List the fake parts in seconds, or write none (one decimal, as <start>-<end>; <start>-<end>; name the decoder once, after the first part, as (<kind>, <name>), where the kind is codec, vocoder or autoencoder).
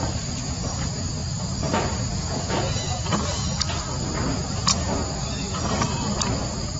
none